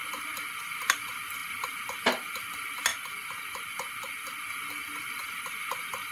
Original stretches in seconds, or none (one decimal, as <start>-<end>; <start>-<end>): 0.6-5.2